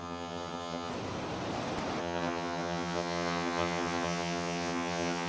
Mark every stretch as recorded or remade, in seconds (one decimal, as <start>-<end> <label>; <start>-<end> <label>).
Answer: 0.0-0.9 remade; 0.9-2.0 recorded; 2.0-5.3 remade